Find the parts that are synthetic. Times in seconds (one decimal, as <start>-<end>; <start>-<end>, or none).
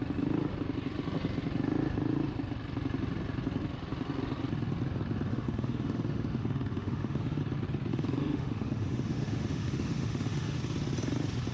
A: 5.3-7.4; 7.9-10.6